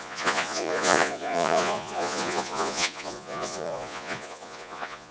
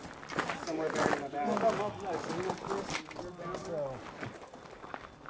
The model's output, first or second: first